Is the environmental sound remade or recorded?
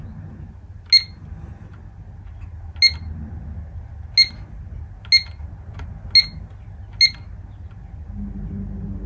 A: recorded